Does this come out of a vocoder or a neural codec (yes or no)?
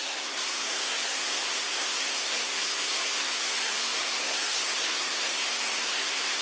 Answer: yes